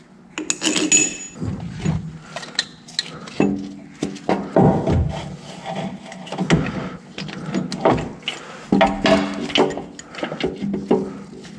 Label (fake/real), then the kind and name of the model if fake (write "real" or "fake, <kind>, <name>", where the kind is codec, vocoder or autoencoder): real